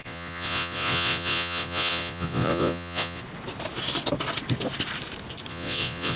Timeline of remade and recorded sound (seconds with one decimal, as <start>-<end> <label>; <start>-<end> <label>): 0.0-3.2 remade; 3.2-5.5 recorded; 5.5-6.2 remade